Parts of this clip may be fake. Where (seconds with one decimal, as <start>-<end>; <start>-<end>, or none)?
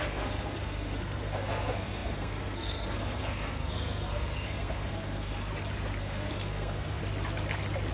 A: 0.0-5.5; 6.0-7.0